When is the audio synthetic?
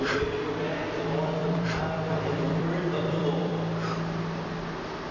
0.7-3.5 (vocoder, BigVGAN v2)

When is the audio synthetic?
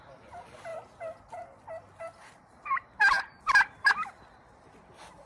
0.0-0.7 (vocoder, BigVGAN v2); 2.0-5.3